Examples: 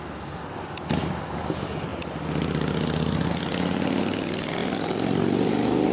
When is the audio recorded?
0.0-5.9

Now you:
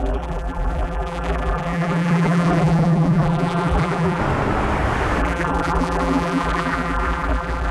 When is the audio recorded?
4.2-5.2

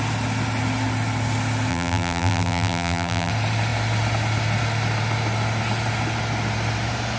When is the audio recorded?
0.0-1.7; 3.3-7.2

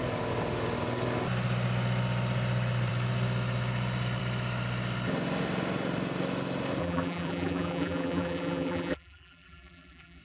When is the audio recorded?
0.0-6.8

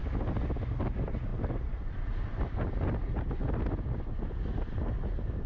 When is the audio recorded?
0.0-1.3; 2.1-5.5

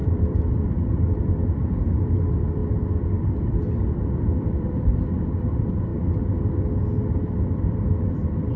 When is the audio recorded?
2.6-3.2; 5.9-7.1

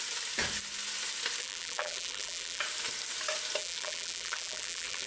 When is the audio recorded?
0.0-1.4; 2.6-3.6

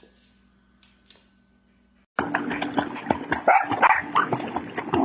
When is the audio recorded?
0.0-3.5; 4.0-5.0